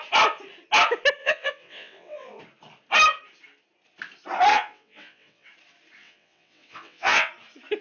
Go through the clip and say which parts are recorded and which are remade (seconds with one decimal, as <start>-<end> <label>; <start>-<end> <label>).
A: 0.0-1.2 recorded; 1.2-2.4 remade; 2.4-4.5 recorded; 4.5-5.5 remade; 5.5-6.0 recorded; 6.0-7.3 remade; 7.3-7.8 recorded